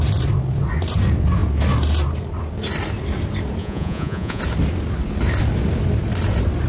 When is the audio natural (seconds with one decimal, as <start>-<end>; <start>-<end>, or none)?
0.0-3.6; 4.4-6.7